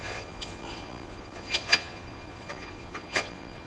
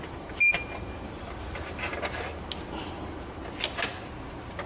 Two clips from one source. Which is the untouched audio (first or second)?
second